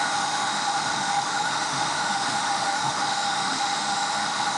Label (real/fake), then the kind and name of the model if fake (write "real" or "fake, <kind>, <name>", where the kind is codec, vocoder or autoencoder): fake, autoencoder, DAC-VAE